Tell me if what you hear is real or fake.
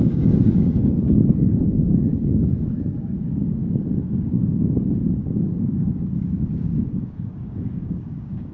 fake